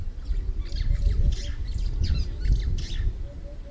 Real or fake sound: real